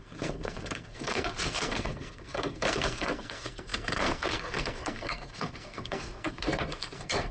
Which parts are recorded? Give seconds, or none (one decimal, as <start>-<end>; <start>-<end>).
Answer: none